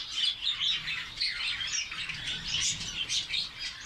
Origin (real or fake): real